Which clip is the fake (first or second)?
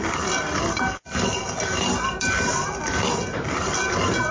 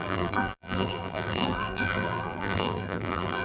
second